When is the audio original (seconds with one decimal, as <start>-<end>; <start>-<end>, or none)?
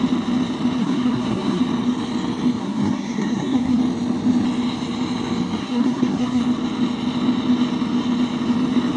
0.0-0.8; 1.6-2.6; 3.8-5.6; 6.4-9.0